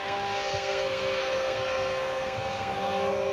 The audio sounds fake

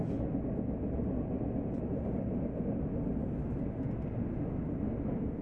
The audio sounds real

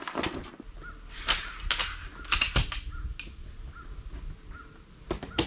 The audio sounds real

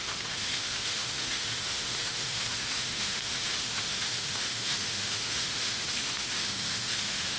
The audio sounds fake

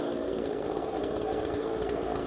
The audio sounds fake